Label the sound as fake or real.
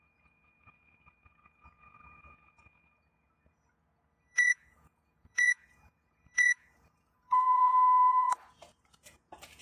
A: fake